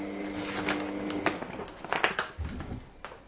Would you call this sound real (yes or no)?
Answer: yes